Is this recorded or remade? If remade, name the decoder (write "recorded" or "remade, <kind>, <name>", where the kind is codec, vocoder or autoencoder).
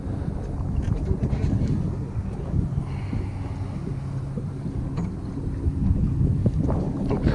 recorded